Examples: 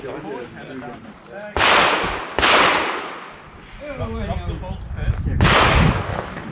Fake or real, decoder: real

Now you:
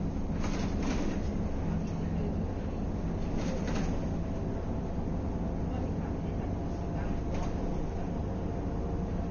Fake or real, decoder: real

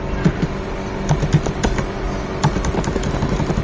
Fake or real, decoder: real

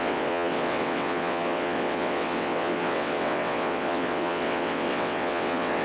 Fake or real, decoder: fake, vocoder, WaveNeXt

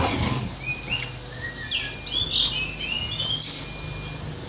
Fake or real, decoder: real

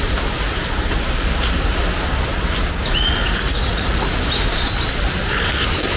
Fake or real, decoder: real